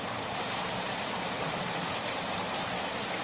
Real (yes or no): yes